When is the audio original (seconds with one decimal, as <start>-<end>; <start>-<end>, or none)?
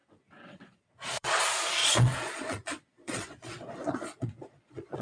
1.4-1.8